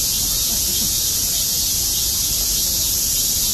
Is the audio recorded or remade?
recorded